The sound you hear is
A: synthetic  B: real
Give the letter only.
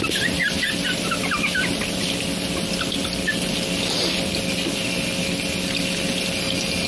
B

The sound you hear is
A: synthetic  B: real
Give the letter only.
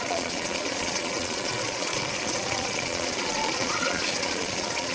A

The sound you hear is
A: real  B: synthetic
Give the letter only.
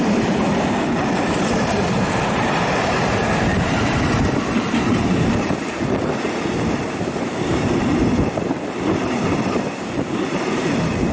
B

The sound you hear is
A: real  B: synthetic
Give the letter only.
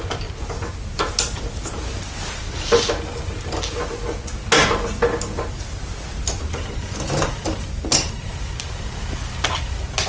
A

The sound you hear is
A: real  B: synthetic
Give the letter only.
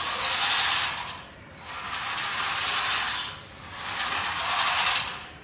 A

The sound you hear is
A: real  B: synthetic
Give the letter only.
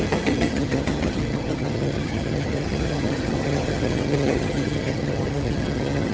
B